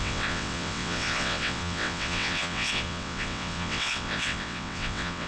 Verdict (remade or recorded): remade